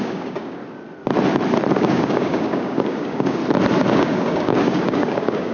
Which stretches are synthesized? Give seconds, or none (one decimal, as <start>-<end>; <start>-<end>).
0.0-0.6; 1.7-3.4; 3.9-5.5